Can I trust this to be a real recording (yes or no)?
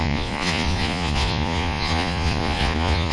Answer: no